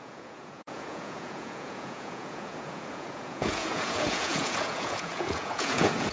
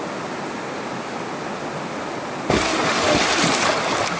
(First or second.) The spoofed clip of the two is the first